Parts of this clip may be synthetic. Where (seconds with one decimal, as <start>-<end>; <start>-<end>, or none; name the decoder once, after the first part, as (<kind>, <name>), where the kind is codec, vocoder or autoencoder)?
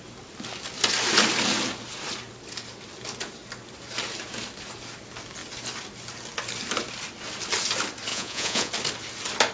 8.1-8.7 (vocoder, Vocos)